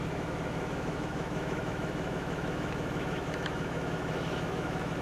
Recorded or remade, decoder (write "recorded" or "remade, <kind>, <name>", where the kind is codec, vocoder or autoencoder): remade, autoencoder, DAC-VAE